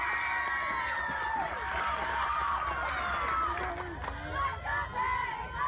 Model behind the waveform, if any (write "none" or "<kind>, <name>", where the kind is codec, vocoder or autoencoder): none